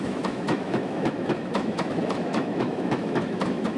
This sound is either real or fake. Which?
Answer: fake